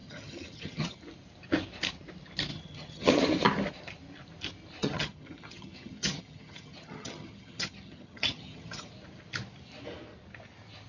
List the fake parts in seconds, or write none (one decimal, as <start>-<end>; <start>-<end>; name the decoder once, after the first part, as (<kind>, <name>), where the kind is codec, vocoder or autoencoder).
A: 0.0-1.0 (vocoder, HiFi-GAN); 2.5-3.1; 4.8-8.9